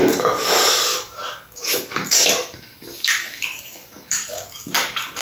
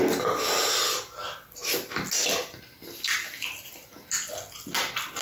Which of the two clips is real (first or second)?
second